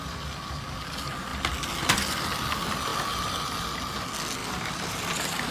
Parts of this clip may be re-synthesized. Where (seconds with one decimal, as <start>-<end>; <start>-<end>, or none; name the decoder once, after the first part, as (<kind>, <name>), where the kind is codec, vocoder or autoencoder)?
4.4-5.5 (vocoder, BigVGAN v2)